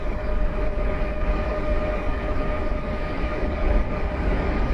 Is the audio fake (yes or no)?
yes